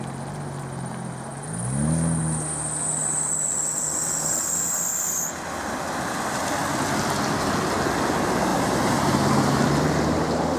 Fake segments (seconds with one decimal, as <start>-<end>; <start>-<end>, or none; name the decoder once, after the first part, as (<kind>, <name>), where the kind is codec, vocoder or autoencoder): 8.5-10.6 (vocoder, BigVGAN v2)

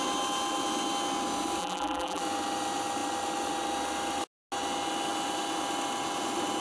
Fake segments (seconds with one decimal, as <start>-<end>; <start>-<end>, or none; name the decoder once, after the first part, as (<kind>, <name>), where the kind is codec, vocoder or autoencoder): 1.6-2.2 (vocoder, BigVGAN v2)

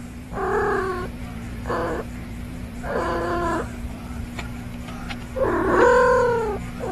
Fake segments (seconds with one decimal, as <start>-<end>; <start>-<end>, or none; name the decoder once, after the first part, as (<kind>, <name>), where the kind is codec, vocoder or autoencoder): 0.0-4.7 (vocoder, BigVGAN v2)

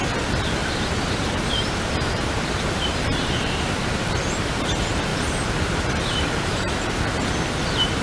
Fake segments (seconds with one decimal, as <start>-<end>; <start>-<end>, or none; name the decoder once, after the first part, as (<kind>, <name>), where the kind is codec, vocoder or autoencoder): 0.6-4.1 (vocoder, BigVGAN v2); 5.1-7.0

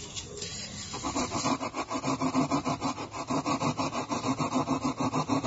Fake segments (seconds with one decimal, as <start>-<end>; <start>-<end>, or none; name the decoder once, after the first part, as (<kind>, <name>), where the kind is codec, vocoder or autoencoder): 0.5-3.8 (vocoder, BigVGAN v2)

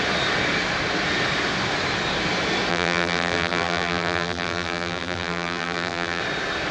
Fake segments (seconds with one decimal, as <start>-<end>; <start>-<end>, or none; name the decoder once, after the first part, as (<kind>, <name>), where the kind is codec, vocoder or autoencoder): 2.7-6.2 (vocoder, BigVGAN v2)